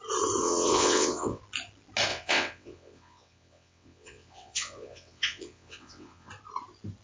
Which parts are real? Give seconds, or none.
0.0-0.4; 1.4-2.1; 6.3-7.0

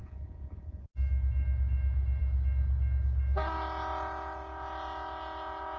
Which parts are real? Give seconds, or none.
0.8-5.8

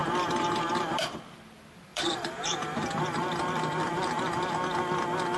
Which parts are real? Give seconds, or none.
1.2-1.9; 4.5-5.4

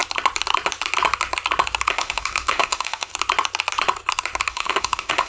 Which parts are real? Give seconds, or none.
0.0-1.9; 3.1-4.5

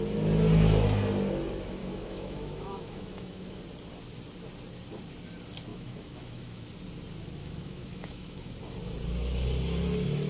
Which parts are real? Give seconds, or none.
0.0-1.8; 3.6-5.7; 6.7-7.4; 8.5-10.3

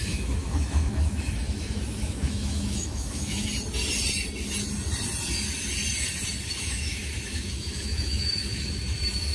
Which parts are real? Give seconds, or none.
3.5-6.6

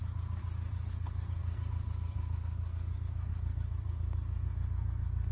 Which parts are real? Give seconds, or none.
0.0-0.9